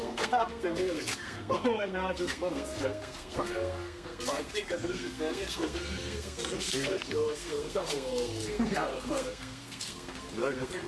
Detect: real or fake fake